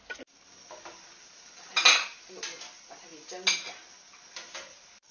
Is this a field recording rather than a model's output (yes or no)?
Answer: yes